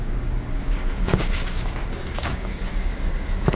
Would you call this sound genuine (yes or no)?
no